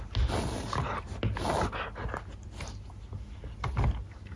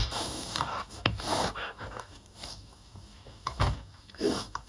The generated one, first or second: second